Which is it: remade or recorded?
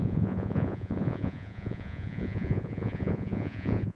remade